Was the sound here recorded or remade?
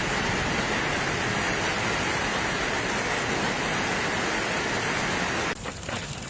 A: recorded